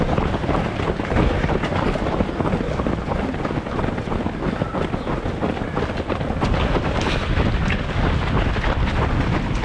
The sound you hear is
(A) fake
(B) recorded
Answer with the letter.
B